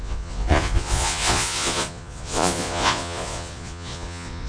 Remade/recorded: remade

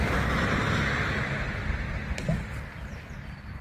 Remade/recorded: recorded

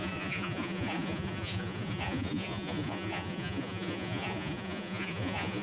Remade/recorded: remade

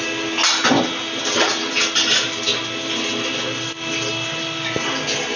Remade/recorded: recorded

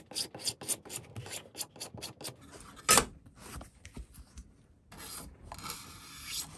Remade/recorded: recorded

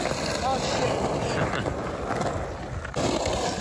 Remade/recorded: recorded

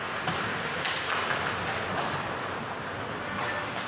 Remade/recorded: recorded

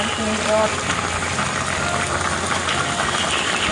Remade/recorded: recorded